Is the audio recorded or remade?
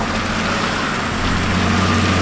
recorded